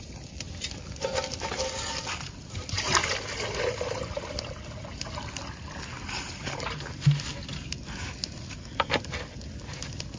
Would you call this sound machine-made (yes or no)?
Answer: no